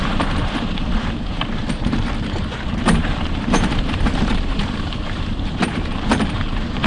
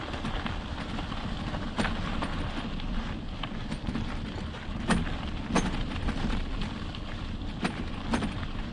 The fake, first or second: first